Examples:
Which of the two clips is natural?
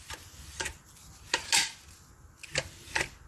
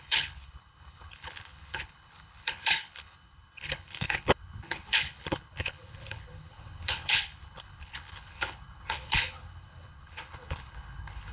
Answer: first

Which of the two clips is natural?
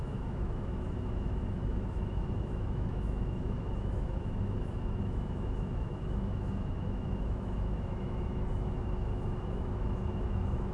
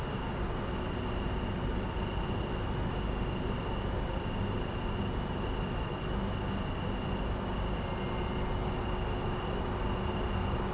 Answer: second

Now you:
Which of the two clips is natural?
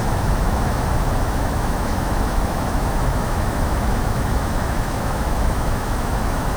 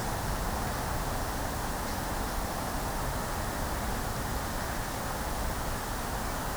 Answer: second